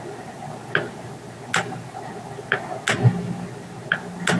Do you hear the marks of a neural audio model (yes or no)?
no